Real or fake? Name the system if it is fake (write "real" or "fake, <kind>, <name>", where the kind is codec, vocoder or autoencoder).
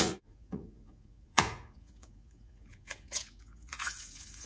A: fake, vocoder, Vocos